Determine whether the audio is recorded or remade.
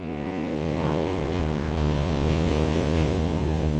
remade